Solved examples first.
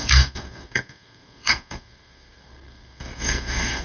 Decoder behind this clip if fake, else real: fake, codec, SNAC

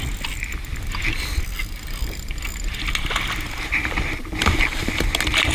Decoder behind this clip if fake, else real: real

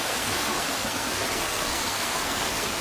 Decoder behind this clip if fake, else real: fake, codec, SNAC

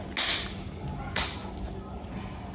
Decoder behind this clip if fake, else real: real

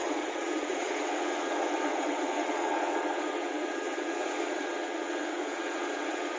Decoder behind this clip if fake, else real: fake, vocoder, WaveNeXt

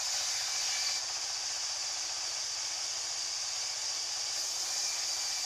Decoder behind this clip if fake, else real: real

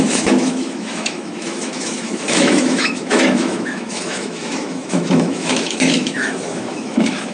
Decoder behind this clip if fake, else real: fake, autoencoder, DAC-VAE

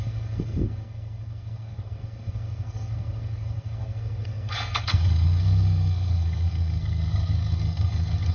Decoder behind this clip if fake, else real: fake, codec, SNAC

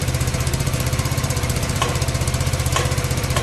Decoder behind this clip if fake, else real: fake, vocoder, BigVGAN v2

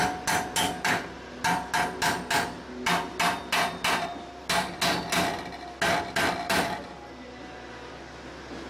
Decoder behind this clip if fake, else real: real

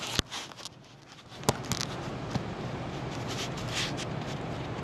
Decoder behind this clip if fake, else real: real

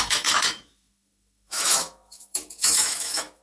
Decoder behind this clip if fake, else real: fake, autoencoder, DAC-VAE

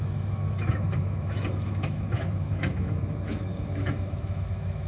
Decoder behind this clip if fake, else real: fake, autoencoder, DAC-VAE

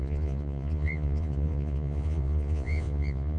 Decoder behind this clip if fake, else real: fake, vocoder, Vocos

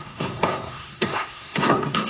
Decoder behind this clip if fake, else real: fake, codec, SNAC